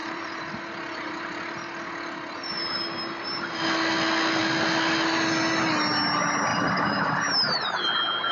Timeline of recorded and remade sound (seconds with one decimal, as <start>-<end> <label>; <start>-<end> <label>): 0.0-0.5 remade; 0.5-6.5 recorded; 6.5-7.1 remade; 7.1-8.3 recorded